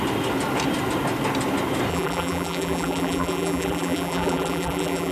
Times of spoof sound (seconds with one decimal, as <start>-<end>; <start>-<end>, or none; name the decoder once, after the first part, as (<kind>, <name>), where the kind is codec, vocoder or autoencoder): 1.9-5.1 (vocoder, BigVGAN v2)